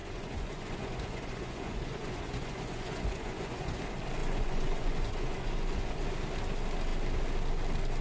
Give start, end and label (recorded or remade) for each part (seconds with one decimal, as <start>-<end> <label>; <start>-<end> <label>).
0.0-3.8 remade; 3.8-4.2 recorded; 4.2-6.0 remade; 6.0-8.0 recorded